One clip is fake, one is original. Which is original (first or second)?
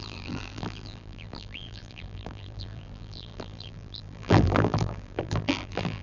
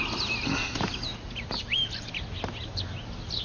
second